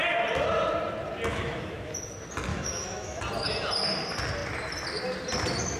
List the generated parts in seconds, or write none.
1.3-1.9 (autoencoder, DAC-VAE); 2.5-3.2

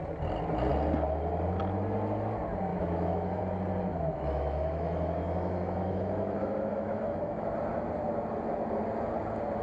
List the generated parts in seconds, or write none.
2.7-3.4 (autoencoder, DAC-VAE); 3.9-7.5

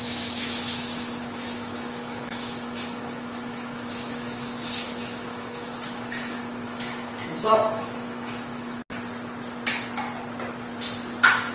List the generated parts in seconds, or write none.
0.0-8.8 (autoencoder, DAC-VAE)

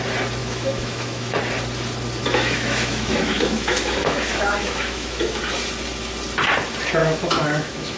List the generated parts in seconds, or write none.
0.4-1.4 (autoencoder, DAC-VAE); 2.2-5.4; 7.0-8.0

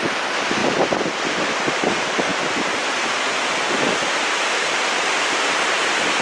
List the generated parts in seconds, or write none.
none